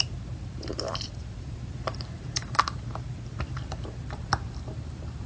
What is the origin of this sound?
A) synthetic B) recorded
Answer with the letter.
A